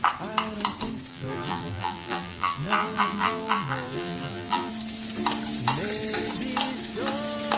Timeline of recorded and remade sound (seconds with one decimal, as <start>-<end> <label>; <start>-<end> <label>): 0.0-1.1 recorded; 1.1-4.7 remade; 4.7-7.6 recorded